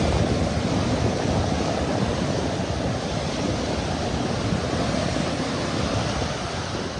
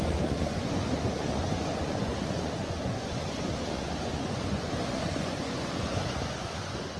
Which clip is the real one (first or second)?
first